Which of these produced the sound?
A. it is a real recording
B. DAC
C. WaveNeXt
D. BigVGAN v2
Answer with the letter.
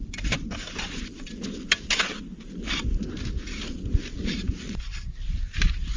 A